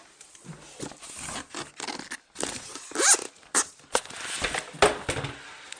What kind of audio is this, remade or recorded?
recorded